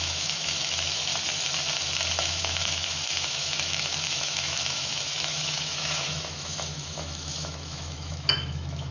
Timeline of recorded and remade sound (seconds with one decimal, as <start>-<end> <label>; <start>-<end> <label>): 0.0-1.1 remade; 1.1-2.2 recorded; 2.2-8.9 remade

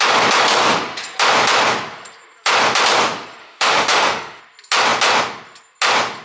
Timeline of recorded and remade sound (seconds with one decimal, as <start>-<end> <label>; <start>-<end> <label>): 0.0-3.4 recorded; 3.4-4.4 remade; 4.4-6.2 recorded

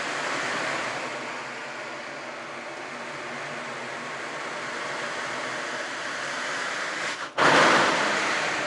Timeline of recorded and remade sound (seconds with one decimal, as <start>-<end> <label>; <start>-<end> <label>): 0.0-8.7 recorded

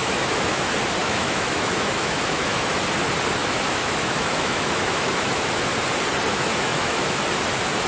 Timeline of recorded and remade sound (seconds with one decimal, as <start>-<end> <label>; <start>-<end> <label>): 0.0-0.6 remade; 0.6-1.0 recorded; 1.0-2.7 remade; 2.7-3.4 recorded; 3.4-5.6 remade; 5.6-6.3 recorded; 6.3-7.2 remade; 7.2-7.9 recorded

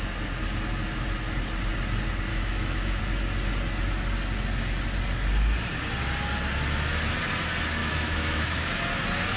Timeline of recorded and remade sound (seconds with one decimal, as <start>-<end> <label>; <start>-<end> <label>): 0.0-2.3 recorded; 2.3-3.0 remade; 3.0-7.8 recorded; 7.8-8.7 remade; 8.7-9.4 recorded

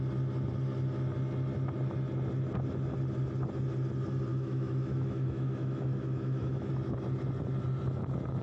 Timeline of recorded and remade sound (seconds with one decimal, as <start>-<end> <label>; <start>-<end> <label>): 0.0-4.3 recorded; 4.3-6.7 remade; 6.7-8.4 recorded

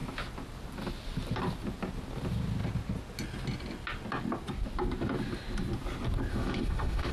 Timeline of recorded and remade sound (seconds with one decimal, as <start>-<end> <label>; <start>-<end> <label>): 0.0-6.3 recorded; 6.3-7.1 remade

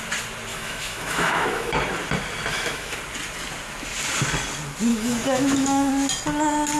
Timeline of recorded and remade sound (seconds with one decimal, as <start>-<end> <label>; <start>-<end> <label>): 0.0-0.5 recorded; 0.5-1.8 remade; 1.8-2.5 recorded; 2.5-3.0 remade; 3.0-4.9 recorded; 4.9-5.9 remade; 5.9-6.8 recorded